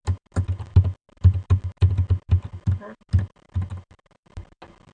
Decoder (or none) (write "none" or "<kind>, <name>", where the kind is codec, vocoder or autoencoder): none